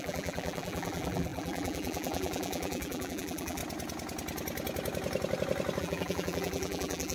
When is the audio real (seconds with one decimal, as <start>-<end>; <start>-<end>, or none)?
3.6-5.8